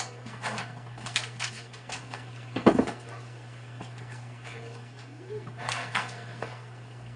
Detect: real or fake fake